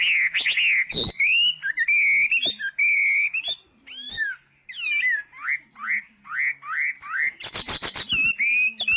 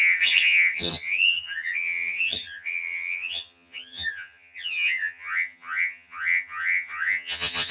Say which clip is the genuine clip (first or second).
first